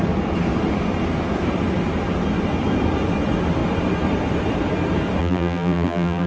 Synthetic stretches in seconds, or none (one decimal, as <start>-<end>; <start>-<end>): 5.2-6.3